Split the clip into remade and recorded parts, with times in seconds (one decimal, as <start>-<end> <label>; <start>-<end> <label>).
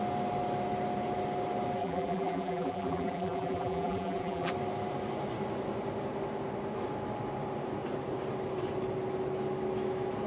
0.0-1.8 recorded; 1.8-4.5 remade; 4.5-10.3 recorded